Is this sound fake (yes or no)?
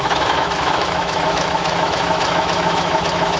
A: yes